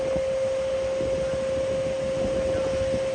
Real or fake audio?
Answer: real